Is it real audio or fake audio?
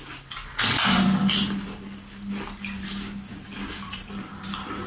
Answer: real